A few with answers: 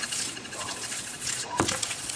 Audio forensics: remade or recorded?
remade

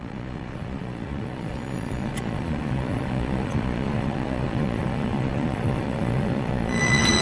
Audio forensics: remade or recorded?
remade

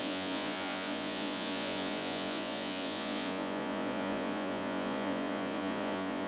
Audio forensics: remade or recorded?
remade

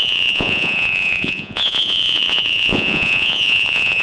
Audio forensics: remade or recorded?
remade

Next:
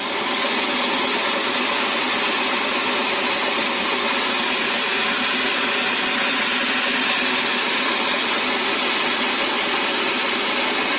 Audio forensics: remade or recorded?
recorded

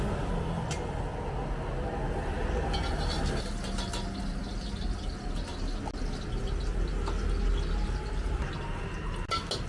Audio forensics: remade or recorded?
recorded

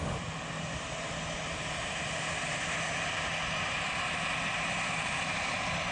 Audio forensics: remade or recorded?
recorded